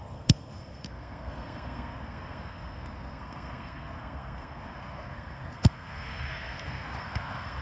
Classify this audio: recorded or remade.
remade